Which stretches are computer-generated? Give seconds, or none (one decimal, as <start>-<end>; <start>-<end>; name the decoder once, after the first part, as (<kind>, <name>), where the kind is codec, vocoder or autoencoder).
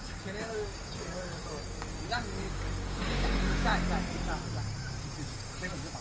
0.0-3.7 (codec, DAC); 5.0-6.0